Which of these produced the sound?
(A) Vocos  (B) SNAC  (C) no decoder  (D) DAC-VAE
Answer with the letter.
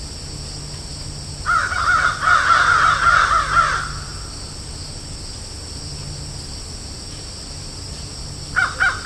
C